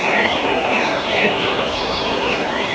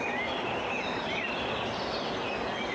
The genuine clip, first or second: second